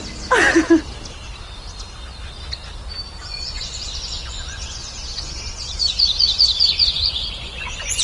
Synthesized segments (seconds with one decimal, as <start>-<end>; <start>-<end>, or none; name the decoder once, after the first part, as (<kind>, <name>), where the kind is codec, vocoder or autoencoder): 3.3-8.0 (vocoder, Vocos)